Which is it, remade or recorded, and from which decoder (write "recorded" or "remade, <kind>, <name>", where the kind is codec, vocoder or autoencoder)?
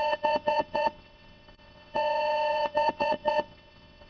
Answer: remade, vocoder, WaveNeXt